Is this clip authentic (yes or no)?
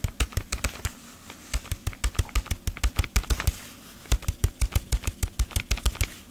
yes